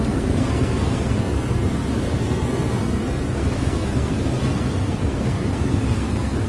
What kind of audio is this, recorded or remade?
remade